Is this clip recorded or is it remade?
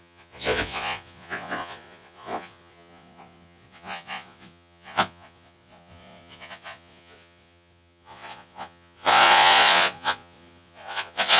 remade